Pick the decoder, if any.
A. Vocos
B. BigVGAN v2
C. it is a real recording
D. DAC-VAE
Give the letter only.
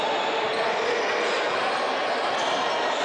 C